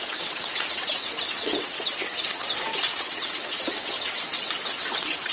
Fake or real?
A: fake